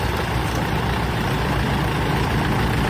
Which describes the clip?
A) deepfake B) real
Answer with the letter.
A